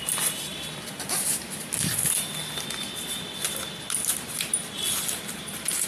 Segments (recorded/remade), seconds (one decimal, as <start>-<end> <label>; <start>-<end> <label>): 0.0-5.9 recorded